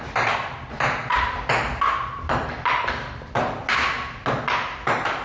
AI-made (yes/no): no